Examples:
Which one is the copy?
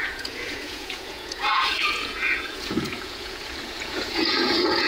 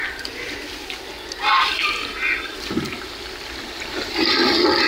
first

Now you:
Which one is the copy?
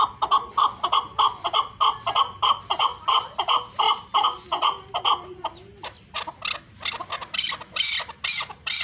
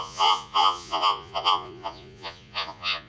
second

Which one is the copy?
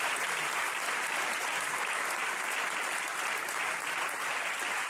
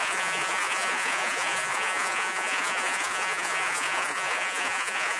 second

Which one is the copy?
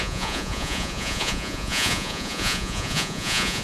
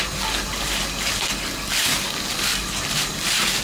first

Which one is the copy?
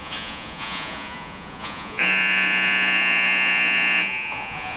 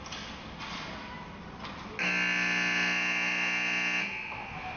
first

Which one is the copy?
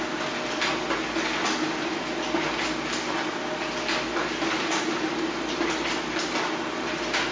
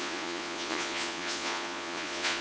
second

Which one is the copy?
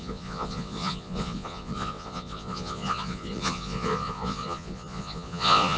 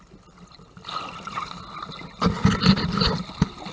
first